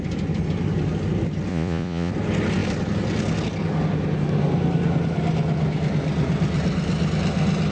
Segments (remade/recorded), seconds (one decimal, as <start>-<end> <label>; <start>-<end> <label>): 0.0-1.5 recorded; 1.5-2.1 remade; 2.1-7.7 recorded